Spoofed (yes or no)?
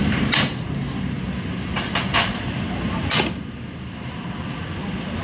no